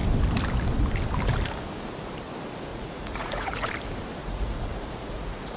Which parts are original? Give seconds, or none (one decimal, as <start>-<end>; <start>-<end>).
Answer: 0.0-2.7; 3.7-4.2